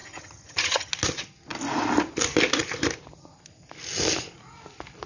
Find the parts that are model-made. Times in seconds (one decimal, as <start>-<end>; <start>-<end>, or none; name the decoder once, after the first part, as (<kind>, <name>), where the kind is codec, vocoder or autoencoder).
0.0-0.9 (vocoder, HiFi-GAN)